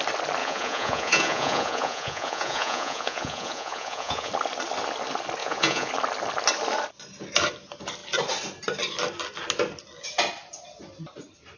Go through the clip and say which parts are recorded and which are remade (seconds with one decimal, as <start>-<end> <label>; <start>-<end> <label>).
0.0-0.4 recorded; 0.4-4.3 remade; 4.3-5.4 recorded; 5.4-5.9 remade; 5.9-11.6 recorded